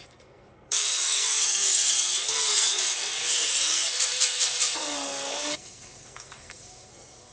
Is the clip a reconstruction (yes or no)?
yes